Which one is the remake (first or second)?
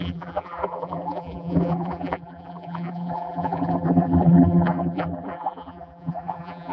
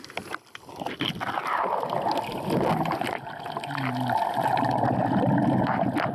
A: first